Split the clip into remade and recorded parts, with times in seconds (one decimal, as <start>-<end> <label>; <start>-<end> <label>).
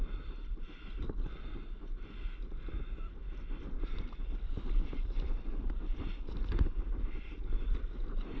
0.0-3.2 recorded; 3.2-7.6 remade; 7.6-8.4 recorded